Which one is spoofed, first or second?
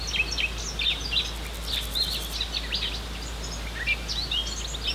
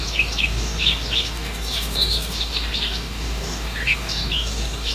second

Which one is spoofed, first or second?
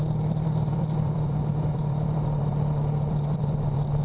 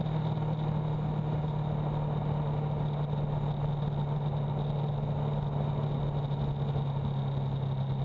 first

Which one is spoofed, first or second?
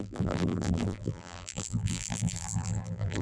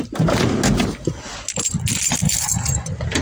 first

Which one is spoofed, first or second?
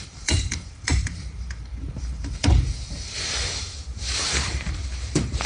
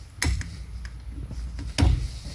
first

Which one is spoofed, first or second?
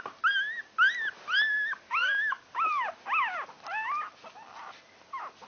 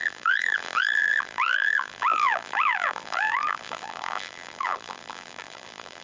second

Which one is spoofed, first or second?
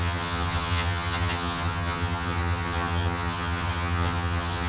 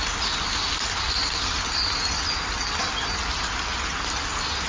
first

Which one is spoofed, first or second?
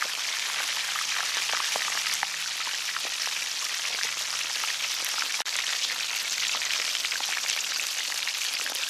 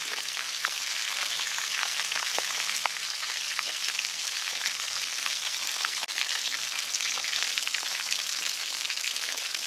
second